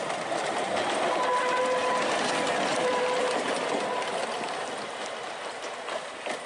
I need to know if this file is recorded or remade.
recorded